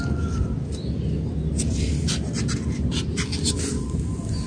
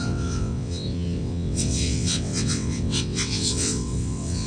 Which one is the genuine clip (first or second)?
first